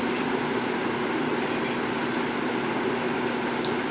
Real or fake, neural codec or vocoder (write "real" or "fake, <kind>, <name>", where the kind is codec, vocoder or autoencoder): real